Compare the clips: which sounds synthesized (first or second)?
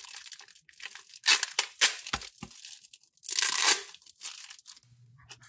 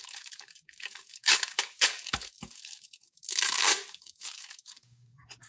second